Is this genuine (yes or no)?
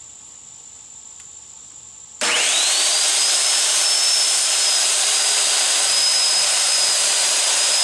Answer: no